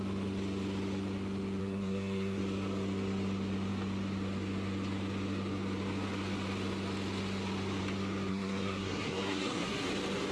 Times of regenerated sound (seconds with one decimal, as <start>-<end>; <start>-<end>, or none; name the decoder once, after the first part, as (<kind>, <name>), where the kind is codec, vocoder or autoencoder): 1.6-2.4 (codec, SNAC); 8.3-9.9

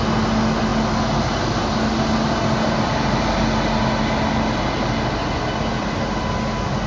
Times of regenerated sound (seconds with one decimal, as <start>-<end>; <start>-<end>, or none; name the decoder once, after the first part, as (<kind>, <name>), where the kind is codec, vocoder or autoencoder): none

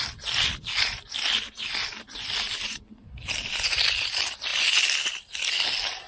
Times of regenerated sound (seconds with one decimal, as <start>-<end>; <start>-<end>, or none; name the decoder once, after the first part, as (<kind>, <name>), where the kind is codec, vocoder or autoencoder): none

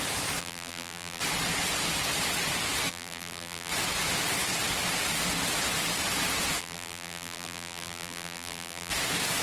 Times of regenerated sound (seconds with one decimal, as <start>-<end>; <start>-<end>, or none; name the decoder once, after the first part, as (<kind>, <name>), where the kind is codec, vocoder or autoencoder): 0.4-1.2 (vocoder, BigVGAN v2); 2.9-3.7; 6.6-8.9

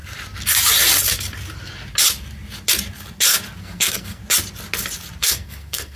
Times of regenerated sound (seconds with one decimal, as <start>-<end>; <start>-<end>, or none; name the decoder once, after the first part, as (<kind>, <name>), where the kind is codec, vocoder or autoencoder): 3.6-4.2 (codec, SNAC); 5.2-6.0

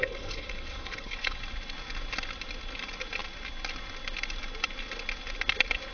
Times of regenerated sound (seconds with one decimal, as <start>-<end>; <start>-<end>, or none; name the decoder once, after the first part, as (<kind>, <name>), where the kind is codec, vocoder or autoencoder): 0.0-1.4 (codec, HILCodec)

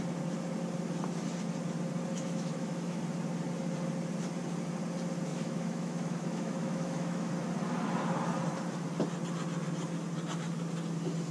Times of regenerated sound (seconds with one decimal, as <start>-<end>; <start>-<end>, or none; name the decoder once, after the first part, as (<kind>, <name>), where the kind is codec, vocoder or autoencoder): 2.1-3.0 (autoencoder, DAC-VAE); 5.3-7.3